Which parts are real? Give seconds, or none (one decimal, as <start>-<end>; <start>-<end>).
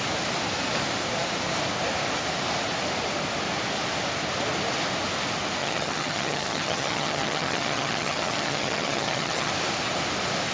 0.0-5.6; 9.5-10.5